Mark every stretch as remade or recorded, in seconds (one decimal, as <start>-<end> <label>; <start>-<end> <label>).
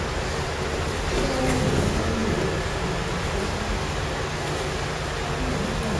0.0-6.0 recorded